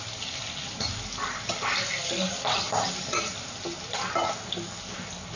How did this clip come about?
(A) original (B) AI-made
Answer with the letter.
A